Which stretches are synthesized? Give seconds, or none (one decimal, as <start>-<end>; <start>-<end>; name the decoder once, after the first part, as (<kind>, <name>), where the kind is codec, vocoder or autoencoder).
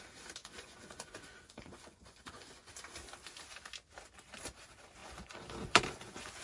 0.4-2.7 (vocoder, Vocos); 5.0-6.4